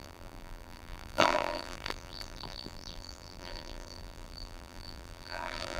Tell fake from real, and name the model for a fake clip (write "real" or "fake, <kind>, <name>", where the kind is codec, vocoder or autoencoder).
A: fake, vocoder, BigVGAN v2